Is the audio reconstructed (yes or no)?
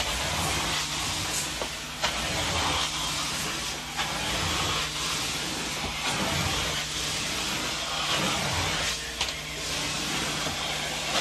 no